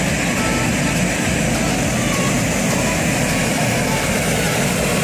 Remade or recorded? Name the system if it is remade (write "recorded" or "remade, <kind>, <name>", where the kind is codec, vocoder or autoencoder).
recorded